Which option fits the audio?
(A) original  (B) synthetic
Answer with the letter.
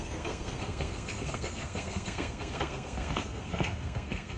B